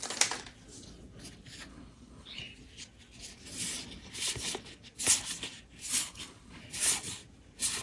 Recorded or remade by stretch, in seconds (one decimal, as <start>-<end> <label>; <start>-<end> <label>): 0.0-1.7 recorded; 1.7-2.4 remade; 2.4-5.9 recorded; 5.9-6.6 remade; 6.6-7.8 recorded

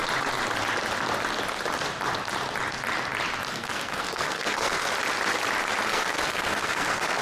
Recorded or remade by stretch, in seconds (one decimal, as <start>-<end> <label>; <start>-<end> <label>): 0.0-3.5 recorded; 3.5-4.9 remade; 4.9-5.8 recorded; 5.8-7.2 remade

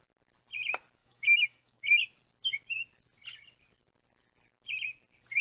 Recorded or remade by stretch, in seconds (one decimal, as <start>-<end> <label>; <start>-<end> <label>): 0.0-1.0 recorded; 1.0-2.0 remade; 2.0-5.4 recorded

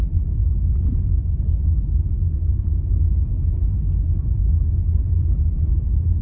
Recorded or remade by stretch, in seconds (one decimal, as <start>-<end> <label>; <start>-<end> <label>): 0.0-6.2 recorded